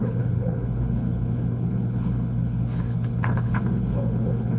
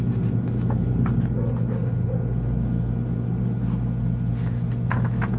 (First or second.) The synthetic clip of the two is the first